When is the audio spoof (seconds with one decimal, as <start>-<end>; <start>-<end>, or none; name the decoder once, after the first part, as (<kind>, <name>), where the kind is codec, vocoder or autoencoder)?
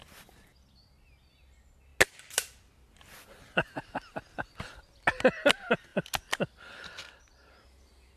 none